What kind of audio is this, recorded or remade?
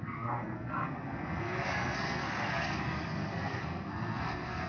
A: remade